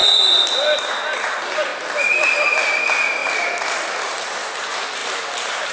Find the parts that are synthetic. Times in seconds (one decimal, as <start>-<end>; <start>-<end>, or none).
0.5-3.2; 4.0-5.7

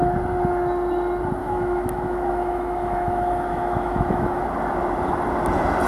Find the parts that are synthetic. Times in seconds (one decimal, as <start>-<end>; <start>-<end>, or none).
1.4-4.4

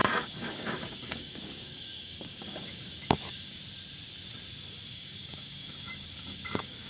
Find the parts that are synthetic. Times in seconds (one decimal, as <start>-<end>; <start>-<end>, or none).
0.0-3.6; 4.9-6.9

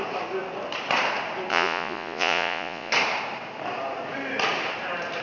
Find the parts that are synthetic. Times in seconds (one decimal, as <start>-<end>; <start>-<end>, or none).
1.5-2.9

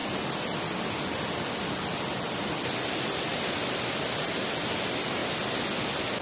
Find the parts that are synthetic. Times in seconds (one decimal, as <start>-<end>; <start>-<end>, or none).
none